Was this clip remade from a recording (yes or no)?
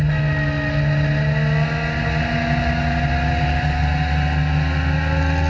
no